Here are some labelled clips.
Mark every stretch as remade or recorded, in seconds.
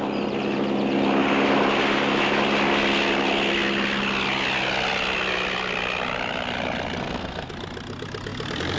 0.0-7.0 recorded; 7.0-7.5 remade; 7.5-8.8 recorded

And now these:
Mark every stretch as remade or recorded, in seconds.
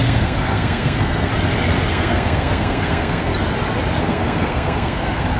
0.0-1.3 remade; 1.3-1.9 recorded; 1.9-3.3 remade; 3.3-4.0 recorded; 4.0-5.4 remade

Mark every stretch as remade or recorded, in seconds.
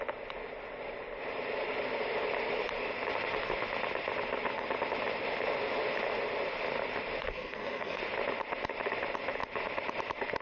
0.0-7.3 recorded; 7.3-8.0 remade; 8.0-10.4 recorded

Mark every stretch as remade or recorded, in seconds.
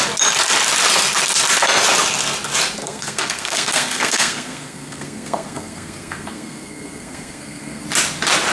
0.0-2.8 recorded; 2.8-7.8 remade; 7.8-8.5 recorded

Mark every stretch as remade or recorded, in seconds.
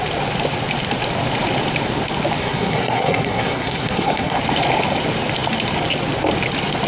0.0-2.4 recorded; 2.4-4.4 remade; 4.4-6.9 recorded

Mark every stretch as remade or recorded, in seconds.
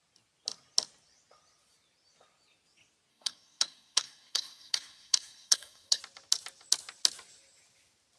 0.0-3.1 recorded; 3.1-6.0 remade; 6.0-8.2 recorded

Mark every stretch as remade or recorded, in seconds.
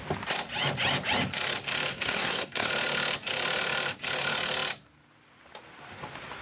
0.0-1.9 recorded; 1.9-2.7 remade; 2.7-6.4 recorded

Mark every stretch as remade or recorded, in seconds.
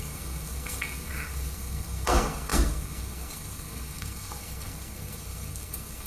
0.0-6.1 remade